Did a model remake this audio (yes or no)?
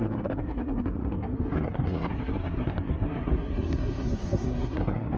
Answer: yes